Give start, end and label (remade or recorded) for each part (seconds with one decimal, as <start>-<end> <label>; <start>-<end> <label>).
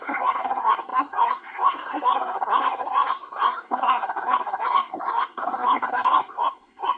0.0-7.0 remade